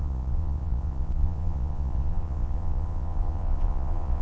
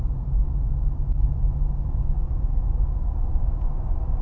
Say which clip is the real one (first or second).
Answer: second